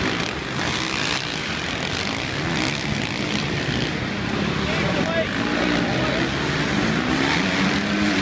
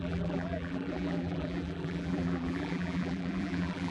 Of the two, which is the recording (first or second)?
first